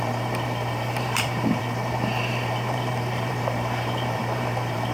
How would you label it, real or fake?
fake